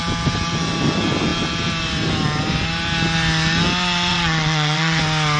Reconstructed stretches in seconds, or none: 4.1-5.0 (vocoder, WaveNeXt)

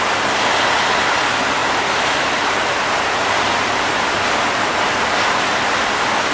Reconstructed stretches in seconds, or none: none

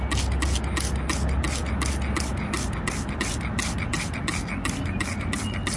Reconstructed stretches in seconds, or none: none